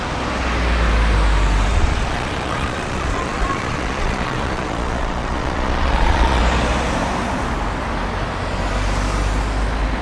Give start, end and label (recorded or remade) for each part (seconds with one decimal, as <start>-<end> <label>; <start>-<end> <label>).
0.0-1.7 recorded; 1.7-6.4 remade; 6.4-10.0 recorded